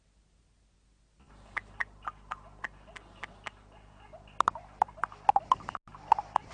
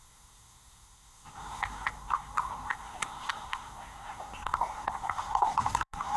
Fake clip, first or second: second